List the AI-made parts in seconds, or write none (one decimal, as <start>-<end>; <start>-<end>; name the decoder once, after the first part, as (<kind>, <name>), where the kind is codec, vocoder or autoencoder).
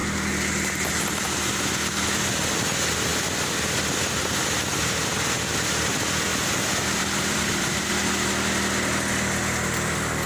0.0-1.7 (vocoder, BigVGAN v2); 6.3-7.9